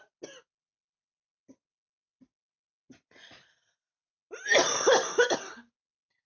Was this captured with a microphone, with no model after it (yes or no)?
yes